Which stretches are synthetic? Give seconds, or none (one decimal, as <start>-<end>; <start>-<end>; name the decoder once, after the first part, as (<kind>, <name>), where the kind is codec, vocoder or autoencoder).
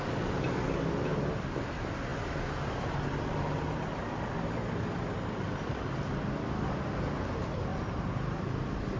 none